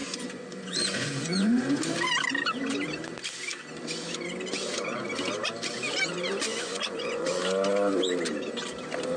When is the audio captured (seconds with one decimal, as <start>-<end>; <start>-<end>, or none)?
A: 1.8-6.5; 7.4-9.2